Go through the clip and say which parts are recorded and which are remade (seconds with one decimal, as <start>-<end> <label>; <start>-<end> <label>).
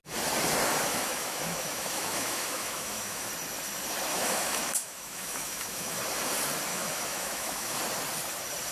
0.0-0.9 recorded; 0.9-3.3 remade; 3.3-4.1 recorded; 4.1-6.0 remade; 6.0-6.7 recorded; 6.7-7.8 remade; 7.8-8.7 recorded